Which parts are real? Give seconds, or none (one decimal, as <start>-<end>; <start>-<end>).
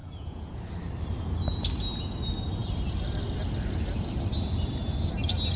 0.6-5.6